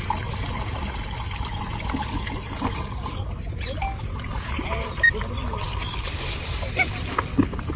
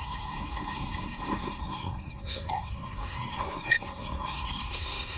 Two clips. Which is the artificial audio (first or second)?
second